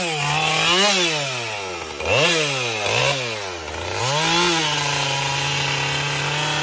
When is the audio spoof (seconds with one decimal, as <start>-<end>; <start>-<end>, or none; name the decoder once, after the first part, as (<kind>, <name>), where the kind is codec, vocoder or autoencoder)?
none

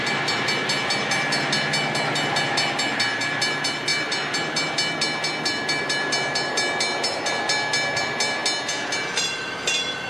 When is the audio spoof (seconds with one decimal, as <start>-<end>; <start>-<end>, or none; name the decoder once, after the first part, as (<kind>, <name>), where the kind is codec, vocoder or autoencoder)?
none

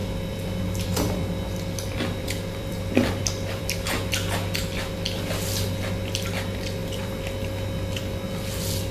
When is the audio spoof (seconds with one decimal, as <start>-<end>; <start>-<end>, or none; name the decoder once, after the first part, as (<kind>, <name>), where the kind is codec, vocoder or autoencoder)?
0.0-3.6 (vocoder, BigVGAN v2); 6.8-7.3

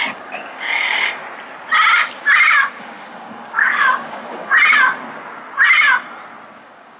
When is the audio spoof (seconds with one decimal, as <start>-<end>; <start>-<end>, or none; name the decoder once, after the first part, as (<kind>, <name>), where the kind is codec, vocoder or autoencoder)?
0.0-1.2 (codec, DAC); 2.8-4.5; 6.6-7.0

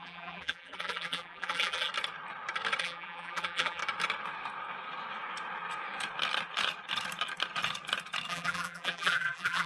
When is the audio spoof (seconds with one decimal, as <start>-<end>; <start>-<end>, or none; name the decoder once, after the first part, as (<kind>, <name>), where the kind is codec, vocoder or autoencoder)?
0.0-1.9 (vocoder, BigVGAN v2); 2.8-3.8; 8.3-9.7

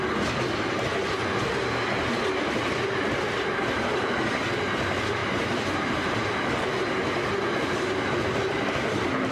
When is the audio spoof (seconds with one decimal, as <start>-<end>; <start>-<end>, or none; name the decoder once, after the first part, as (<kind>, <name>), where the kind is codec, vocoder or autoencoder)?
5.2-6.7 (vocoder, BigVGAN v2)